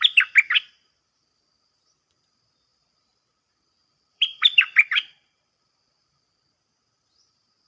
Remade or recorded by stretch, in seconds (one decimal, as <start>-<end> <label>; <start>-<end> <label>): 0.0-2.7 recorded; 2.7-6.4 remade; 6.4-7.7 recorded